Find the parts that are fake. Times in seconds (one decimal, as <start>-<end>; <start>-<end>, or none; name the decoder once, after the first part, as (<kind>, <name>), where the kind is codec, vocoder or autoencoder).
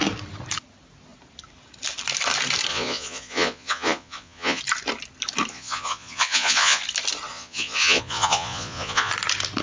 2.7-4.6 (vocoder, Vocos); 5.5-6.8; 7.3-9.1